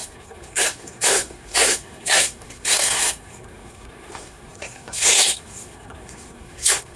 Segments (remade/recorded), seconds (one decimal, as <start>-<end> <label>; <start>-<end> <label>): 0.0-7.0 remade